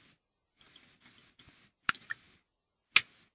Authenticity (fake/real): real